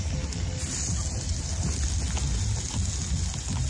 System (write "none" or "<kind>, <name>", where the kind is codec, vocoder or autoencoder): none